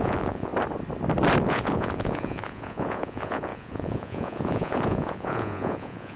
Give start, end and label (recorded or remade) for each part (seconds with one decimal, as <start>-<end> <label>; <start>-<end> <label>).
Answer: 0.0-0.5 remade; 0.5-1.4 recorded; 1.4-6.2 remade